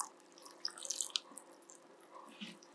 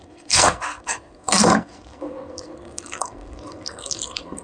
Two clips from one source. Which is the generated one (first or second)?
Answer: second